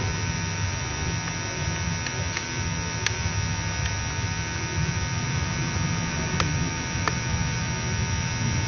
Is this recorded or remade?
recorded